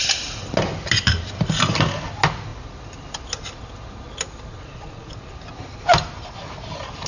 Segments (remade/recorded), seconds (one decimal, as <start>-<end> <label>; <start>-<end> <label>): 0.0-4.5 recorded; 4.5-5.2 remade; 5.2-7.1 recorded